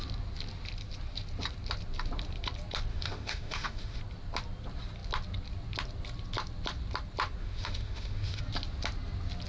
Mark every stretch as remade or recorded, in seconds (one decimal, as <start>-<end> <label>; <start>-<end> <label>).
0.0-2.9 recorded; 2.9-4.0 remade; 4.0-7.4 recorded; 7.4-8.4 remade; 8.4-9.5 recorded